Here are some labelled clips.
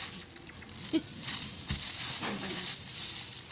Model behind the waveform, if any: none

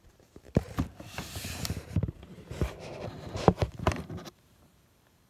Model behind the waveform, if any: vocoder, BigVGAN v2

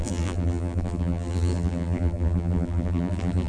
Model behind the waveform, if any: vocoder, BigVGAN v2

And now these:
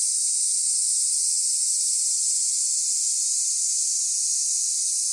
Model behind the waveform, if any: none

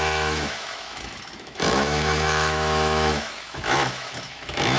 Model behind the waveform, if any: autoencoder, DAC-VAE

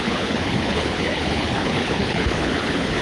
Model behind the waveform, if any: codec, HILCodec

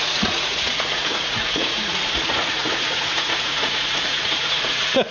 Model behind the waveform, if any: vocoder, Vocos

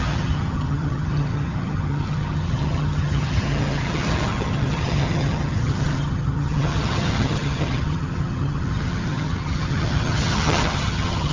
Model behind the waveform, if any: vocoder, HiFi-GAN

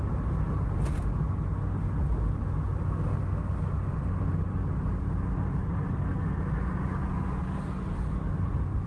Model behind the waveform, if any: none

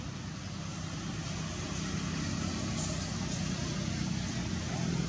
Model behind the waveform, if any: none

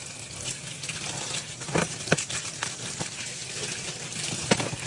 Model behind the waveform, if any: none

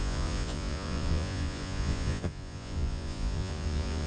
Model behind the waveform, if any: vocoder, Vocos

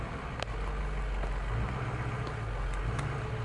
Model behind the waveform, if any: none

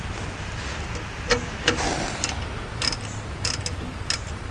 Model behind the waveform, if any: none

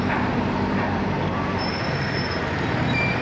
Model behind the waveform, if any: vocoder, BigVGAN v2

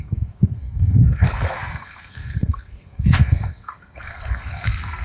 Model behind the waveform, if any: codec, SNAC